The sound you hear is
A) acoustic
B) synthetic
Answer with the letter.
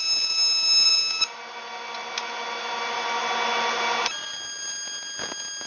A